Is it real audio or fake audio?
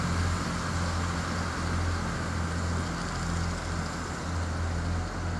real